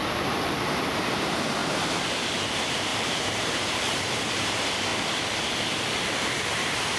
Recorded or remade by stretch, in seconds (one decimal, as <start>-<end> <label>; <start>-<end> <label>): 0.0-4.9 remade; 4.9-5.5 recorded; 5.5-7.0 remade